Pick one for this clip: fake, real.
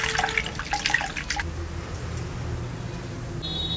real